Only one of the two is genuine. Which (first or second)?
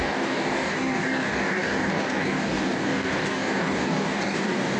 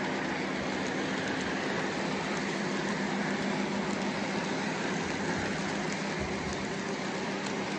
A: second